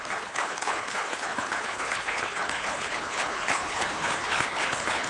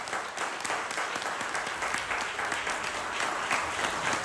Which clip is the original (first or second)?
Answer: second